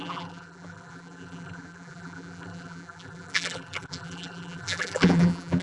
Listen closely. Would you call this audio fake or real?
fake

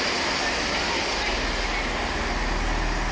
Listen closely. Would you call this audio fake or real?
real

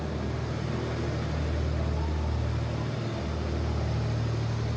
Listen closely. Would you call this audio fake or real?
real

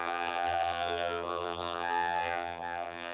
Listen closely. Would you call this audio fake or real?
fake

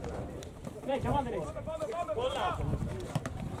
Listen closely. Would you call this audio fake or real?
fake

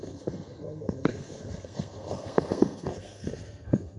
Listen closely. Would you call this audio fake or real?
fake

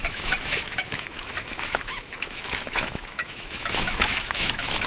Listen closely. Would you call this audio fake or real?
fake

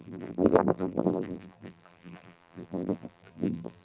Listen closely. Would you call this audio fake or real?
fake